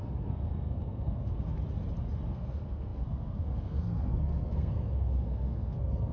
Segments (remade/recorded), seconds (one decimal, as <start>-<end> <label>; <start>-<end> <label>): 0.0-1.5 remade; 1.5-2.3 recorded; 2.3-6.1 remade